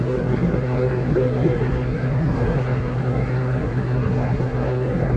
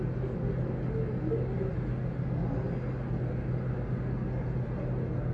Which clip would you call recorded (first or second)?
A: second